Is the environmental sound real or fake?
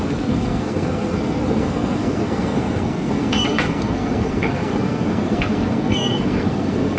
fake